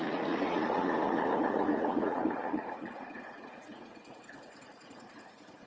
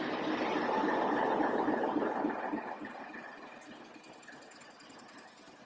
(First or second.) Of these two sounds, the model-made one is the first